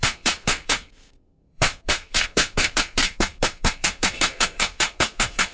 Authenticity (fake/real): fake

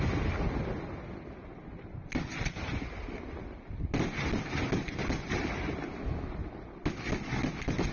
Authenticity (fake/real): real